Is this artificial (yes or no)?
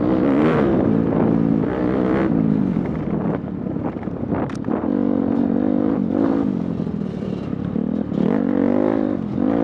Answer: no